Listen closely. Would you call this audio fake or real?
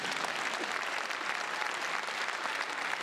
real